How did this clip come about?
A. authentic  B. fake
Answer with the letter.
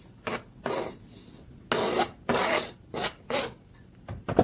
A